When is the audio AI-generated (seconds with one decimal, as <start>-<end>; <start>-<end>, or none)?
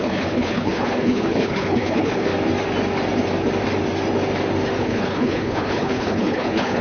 0.0-2.3; 4.8-6.8